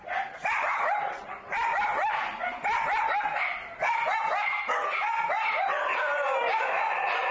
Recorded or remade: recorded